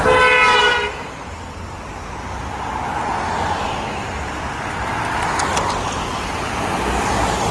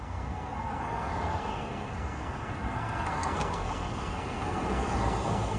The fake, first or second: second